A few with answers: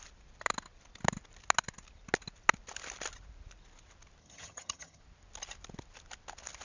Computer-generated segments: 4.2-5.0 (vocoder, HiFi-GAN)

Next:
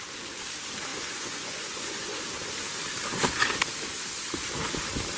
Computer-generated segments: 0.9-2.3 (vocoder, Vocos)

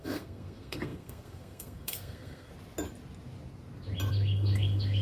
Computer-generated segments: 0.0-2.5 (codec, SNAC); 4.1-5.0

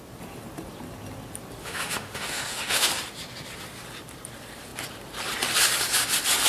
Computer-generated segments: 1.6-2.9 (autoencoder, DAC-VAE)

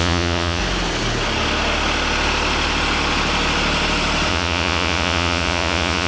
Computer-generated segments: 0.0-0.6 (vocoder, Vocos); 4.3-6.1

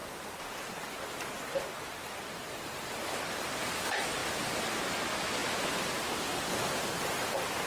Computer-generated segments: none

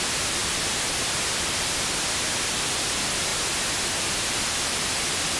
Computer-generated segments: 0.0-3.3 (vocoder, BigVGAN v2); 4.0-5.4